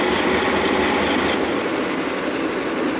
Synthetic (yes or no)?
no